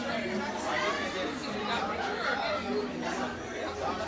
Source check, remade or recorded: recorded